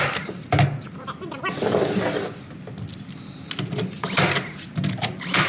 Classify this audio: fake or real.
real